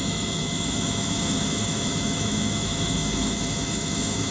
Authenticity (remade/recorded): remade